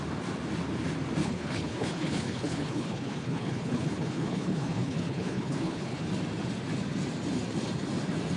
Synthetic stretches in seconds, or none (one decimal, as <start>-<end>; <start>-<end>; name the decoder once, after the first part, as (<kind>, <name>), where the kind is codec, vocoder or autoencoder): 1.2-6.1 (codec, HILCodec)